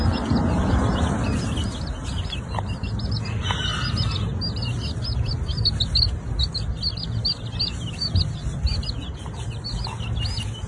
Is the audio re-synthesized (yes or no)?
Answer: no